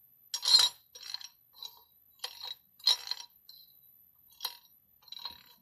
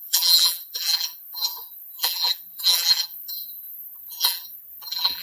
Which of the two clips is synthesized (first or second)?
second